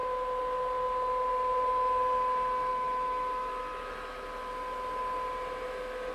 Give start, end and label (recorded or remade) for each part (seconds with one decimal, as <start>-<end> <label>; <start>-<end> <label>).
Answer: 0.0-2.7 recorded; 2.7-4.5 remade; 4.5-6.1 recorded